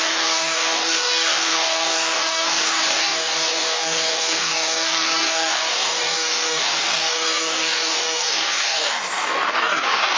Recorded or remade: remade